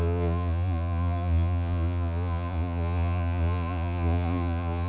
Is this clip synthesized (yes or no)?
yes